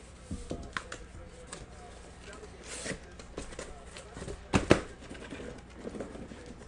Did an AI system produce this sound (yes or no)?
no